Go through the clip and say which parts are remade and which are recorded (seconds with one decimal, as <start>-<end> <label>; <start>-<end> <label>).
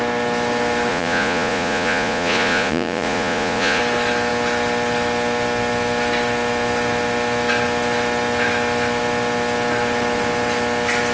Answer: 0.0-0.9 recorded; 0.9-3.8 remade; 3.8-11.1 recorded